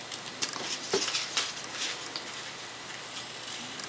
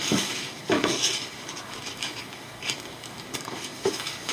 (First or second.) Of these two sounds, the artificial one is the second